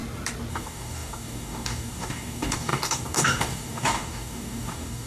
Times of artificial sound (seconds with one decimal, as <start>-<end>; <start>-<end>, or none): 0.5-5.1